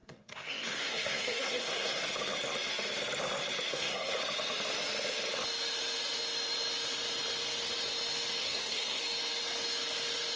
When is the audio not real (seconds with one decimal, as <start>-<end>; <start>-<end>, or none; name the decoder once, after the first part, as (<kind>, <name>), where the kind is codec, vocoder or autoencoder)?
0.0-2.0 (codec, SNAC); 3.7-4.2; 8.4-9.0